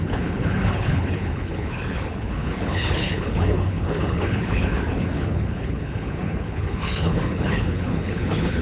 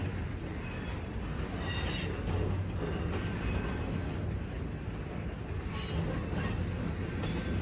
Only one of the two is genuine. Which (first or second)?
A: second